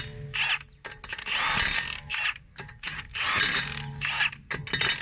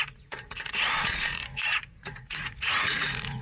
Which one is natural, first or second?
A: first